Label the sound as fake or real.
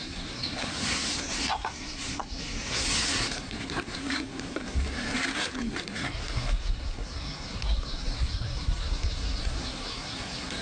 fake